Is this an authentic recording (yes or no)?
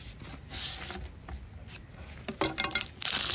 yes